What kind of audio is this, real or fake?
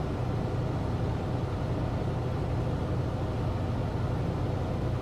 real